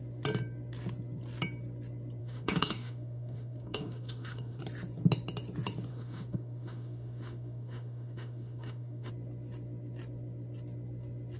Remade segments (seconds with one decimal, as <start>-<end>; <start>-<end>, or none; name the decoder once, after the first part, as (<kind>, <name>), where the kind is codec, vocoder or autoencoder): 2.2-4.6 (autoencoder, DAC-VAE); 5.9-9.1